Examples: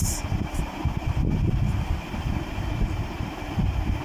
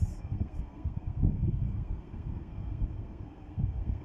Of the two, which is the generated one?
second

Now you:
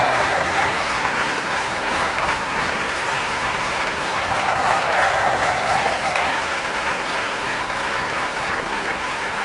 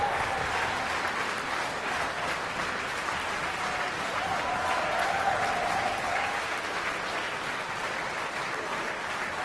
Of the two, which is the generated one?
first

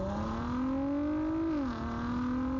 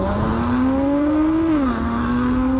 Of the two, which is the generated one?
second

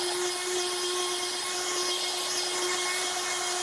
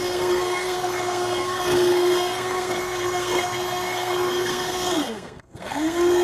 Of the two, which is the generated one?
second